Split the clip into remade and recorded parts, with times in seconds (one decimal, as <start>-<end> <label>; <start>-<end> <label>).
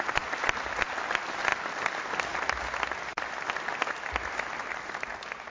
0.0-5.5 recorded